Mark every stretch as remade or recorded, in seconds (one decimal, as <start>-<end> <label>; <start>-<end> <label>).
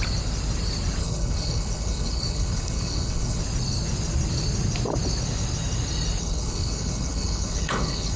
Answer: 0.0-1.0 recorded; 1.0-3.4 remade; 3.4-6.2 recorded; 6.2-8.2 remade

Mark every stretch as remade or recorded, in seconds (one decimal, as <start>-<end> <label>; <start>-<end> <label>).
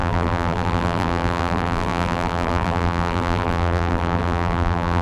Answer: 0.0-5.0 remade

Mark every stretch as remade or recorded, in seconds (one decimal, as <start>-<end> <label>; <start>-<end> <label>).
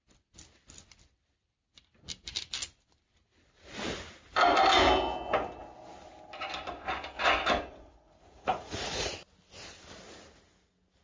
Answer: 0.0-7.7 recorded; 7.7-9.1 remade; 9.1-11.0 recorded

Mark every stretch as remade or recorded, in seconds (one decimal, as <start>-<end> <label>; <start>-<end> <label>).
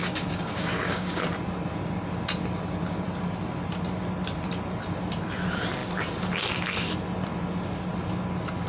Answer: 0.0-1.2 remade; 1.2-8.7 recorded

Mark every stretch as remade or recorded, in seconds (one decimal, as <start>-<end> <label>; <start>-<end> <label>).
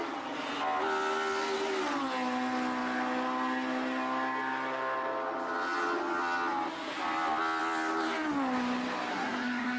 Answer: 0.0-9.1 recorded; 9.1-9.8 remade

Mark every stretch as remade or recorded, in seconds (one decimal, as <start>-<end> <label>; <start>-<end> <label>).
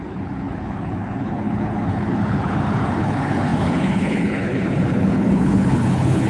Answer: 0.0-6.3 remade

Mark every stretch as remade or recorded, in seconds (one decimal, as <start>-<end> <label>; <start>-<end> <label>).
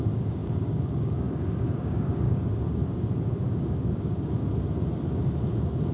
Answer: 0.0-4.4 remade; 4.4-5.9 recorded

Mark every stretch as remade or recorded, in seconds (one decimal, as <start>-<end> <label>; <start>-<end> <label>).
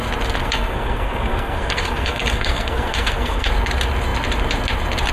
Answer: 0.0-0.4 recorded; 0.4-3.5 remade; 3.5-5.1 recorded